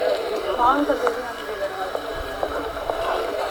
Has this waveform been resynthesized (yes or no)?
yes